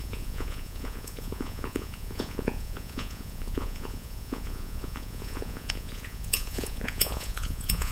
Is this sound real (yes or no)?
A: no